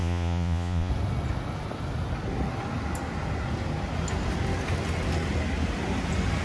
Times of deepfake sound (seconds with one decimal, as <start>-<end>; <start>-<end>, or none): 0.0-0.9